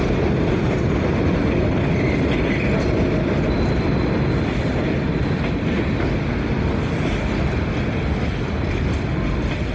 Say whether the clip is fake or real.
real